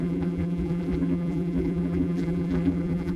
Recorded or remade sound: remade